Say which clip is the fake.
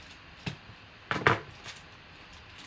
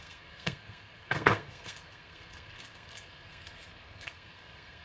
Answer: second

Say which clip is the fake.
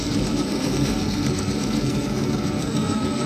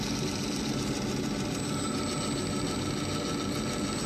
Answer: first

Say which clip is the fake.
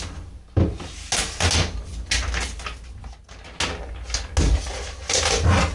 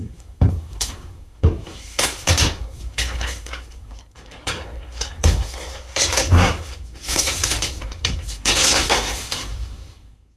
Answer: second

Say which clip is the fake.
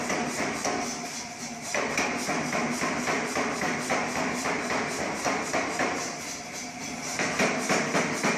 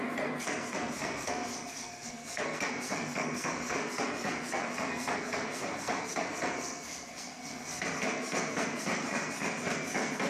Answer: second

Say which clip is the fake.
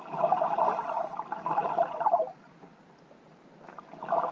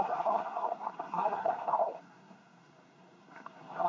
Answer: second